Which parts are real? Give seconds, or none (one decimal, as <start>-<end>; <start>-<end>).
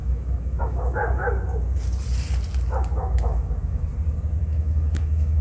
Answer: 1.0-3.0; 3.9-4.4